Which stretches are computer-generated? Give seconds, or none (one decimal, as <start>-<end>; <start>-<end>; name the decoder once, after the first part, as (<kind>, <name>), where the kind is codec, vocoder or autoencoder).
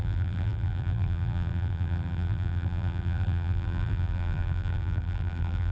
0.0-5.7 (vocoder, BigVGAN v2)